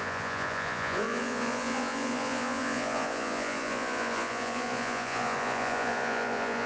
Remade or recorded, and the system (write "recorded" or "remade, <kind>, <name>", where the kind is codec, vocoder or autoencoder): remade, vocoder, Vocos